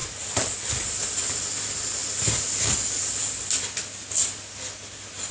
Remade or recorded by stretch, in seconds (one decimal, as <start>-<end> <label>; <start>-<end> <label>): 0.0-5.3 recorded